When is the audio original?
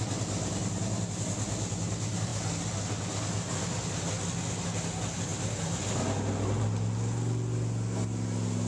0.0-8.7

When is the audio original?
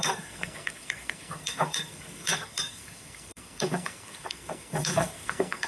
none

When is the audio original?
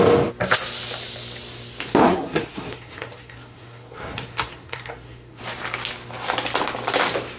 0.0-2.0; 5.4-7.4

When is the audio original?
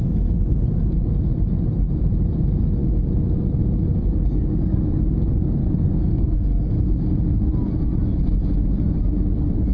0.0-5.6; 6.7-9.7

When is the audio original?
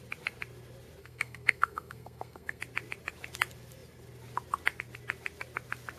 0.0-1.0; 2.6-6.0